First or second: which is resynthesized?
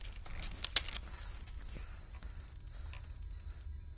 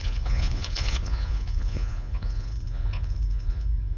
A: second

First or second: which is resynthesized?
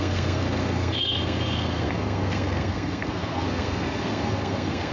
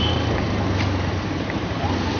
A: first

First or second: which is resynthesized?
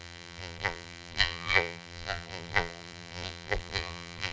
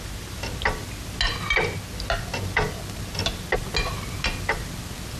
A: first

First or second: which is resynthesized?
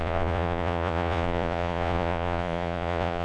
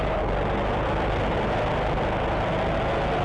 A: first